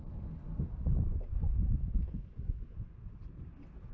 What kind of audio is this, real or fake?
real